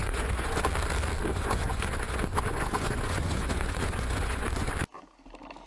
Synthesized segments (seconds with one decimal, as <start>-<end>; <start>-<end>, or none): 0.0-0.6; 1.3-4.7